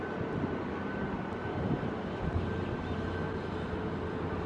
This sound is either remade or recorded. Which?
recorded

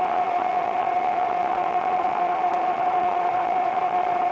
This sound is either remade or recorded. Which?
remade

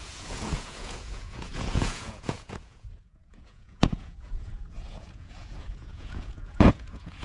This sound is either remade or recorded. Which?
remade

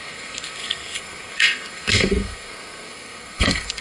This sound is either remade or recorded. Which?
remade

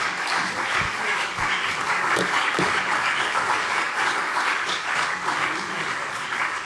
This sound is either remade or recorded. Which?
remade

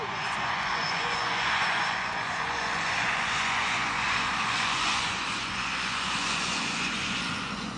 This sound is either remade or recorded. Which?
remade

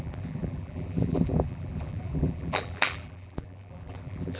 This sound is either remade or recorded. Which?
remade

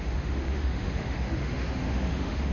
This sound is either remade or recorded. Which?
remade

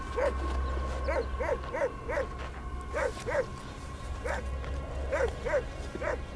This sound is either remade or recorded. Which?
recorded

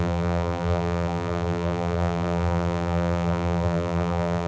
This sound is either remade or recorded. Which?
remade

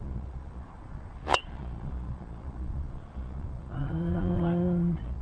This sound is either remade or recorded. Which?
remade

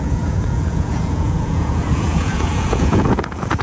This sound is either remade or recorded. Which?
remade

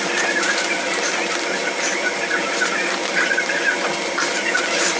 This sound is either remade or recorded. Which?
recorded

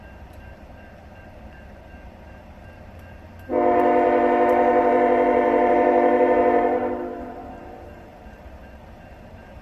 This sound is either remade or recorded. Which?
remade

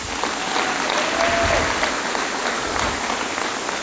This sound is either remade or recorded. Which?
recorded